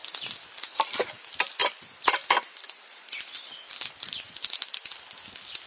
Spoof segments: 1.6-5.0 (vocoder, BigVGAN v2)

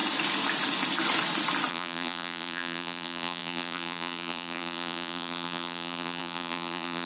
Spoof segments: 1.7-7.1 (vocoder, BigVGAN v2)

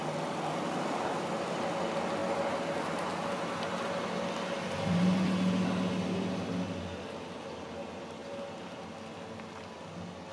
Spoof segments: none

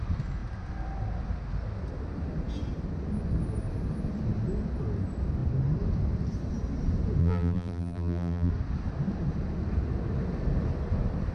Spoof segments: 7.2-8.5 (vocoder, BigVGAN v2)

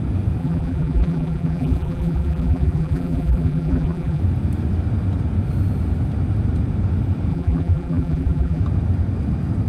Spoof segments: 0.4-4.2 (vocoder, BigVGAN v2); 7.3-8.6

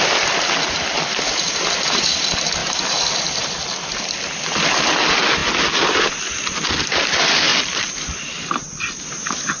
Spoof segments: 2.6-3.5 (vocoder, BigVGAN v2)

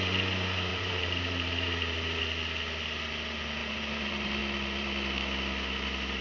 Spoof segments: 0.7-2.2 (vocoder, BigVGAN v2); 3.6-4.4